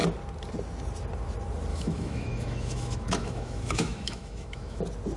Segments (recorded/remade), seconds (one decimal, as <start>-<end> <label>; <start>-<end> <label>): 0.0-1.7 recorded; 1.7-4.8 remade; 4.8-5.2 recorded